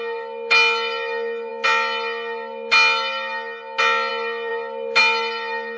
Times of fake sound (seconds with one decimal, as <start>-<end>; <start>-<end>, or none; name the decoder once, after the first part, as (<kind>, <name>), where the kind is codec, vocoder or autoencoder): none